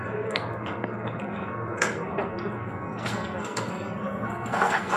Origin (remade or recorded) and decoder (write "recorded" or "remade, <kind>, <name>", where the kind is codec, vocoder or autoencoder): remade, codec, SNAC